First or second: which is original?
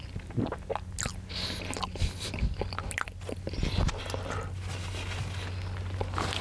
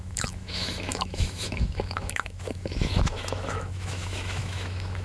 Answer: first